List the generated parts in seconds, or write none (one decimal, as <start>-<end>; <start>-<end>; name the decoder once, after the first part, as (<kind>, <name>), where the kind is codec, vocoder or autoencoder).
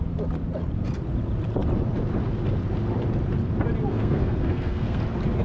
3.9-5.0 (codec, SNAC)